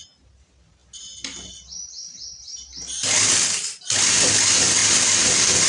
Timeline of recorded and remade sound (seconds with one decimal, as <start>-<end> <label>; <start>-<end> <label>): 0.0-5.7 recorded